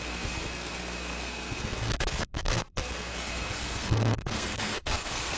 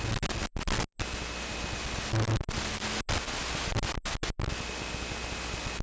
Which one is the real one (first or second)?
second